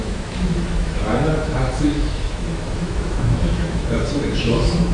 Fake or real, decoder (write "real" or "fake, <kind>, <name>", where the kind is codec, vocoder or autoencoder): fake, autoencoder, DAC-VAE